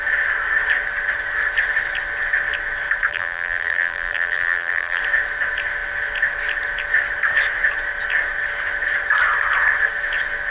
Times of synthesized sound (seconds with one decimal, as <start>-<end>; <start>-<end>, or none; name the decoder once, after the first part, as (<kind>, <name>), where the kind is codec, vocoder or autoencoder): 3.1-5.0 (vocoder, BigVGAN v2)